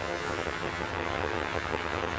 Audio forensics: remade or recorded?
remade